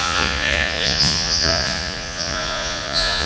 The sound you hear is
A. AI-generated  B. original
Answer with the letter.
A